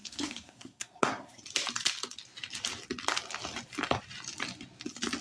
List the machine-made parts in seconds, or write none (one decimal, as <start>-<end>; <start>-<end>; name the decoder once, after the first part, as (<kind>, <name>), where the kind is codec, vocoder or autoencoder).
0.0-1.4 (codec, SNAC)